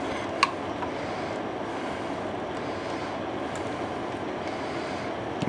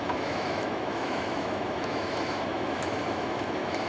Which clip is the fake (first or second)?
second